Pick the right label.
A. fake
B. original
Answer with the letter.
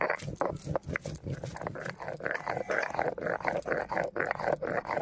B